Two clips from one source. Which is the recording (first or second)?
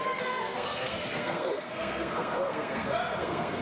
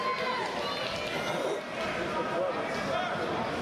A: second